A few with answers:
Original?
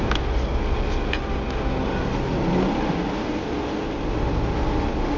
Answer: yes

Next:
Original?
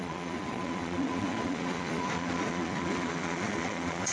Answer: no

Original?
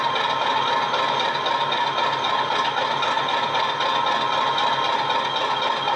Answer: yes